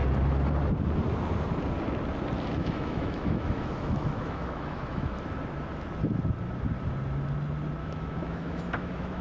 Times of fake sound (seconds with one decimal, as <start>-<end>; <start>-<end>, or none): 2.6-5.2; 7.8-9.2